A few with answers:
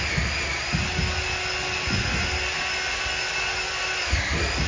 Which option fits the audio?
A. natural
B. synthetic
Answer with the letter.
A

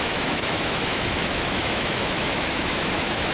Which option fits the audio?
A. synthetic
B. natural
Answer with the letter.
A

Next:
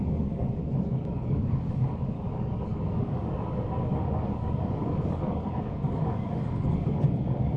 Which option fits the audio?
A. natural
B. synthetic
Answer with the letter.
B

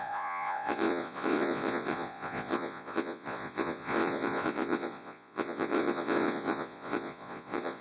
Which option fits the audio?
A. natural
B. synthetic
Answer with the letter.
B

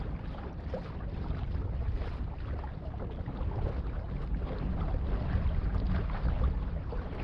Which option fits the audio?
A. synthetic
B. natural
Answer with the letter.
B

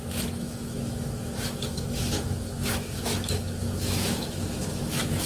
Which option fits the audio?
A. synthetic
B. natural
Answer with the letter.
A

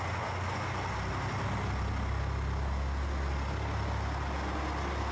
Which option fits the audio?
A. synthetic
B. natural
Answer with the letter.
B